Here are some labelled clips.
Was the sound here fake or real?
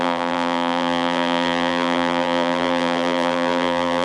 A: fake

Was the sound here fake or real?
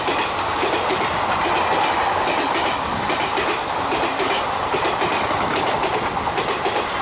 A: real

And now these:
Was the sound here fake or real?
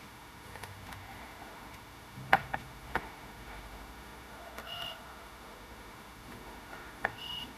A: fake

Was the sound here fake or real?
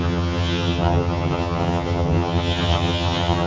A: fake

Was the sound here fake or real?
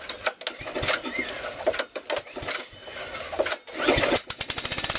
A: real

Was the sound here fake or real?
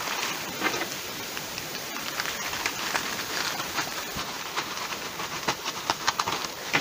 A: fake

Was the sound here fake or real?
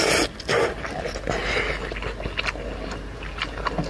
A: real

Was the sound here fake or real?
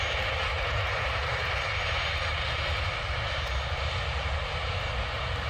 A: real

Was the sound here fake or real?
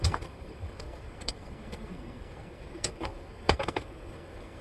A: fake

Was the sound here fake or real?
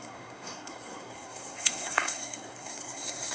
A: fake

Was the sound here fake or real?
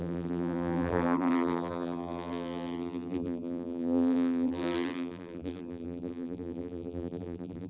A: fake